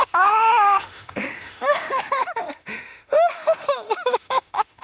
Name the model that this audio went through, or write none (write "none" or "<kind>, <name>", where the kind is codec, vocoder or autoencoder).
autoencoder, DAC-VAE